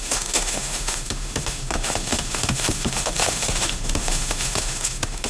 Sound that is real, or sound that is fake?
fake